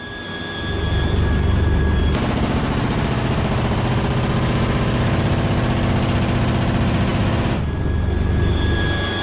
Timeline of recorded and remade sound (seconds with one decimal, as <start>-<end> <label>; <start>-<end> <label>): 0.0-9.2 recorded